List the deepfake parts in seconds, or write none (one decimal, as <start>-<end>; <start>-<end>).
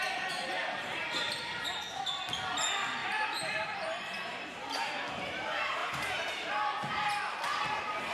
0.6-1.4; 3.0-5.1; 5.8-6.5